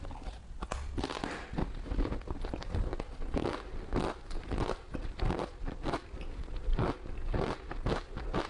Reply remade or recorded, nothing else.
recorded